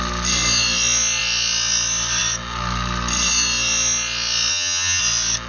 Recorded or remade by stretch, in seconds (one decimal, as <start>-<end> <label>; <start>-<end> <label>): 0.0-4.5 recorded; 4.5-5.0 remade; 5.0-5.5 recorded